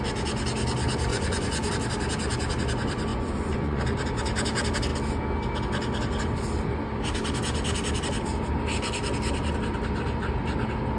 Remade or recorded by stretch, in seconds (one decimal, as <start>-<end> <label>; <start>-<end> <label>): 0.0-1.1 recorded; 1.1-1.7 remade; 1.7-3.1 recorded; 3.1-3.8 remade; 3.8-11.0 recorded